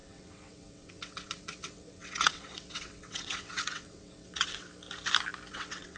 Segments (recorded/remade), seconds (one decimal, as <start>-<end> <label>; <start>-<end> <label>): 0.0-4.7 remade; 4.7-5.5 recorded; 5.5-6.0 remade